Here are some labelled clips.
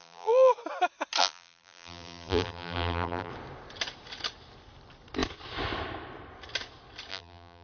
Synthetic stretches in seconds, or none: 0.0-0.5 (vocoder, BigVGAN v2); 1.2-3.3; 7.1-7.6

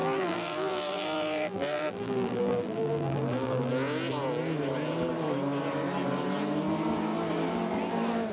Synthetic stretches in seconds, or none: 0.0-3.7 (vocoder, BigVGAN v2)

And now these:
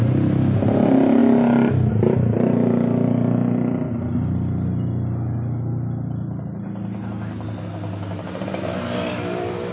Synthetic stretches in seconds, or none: none

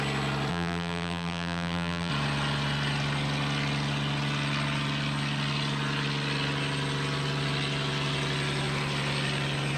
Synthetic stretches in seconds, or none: 0.5-2.1 (vocoder, BigVGAN v2)

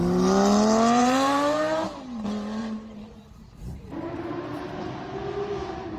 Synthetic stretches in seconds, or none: 1.0-2.2 (vocoder, BigVGAN v2); 2.6-5.2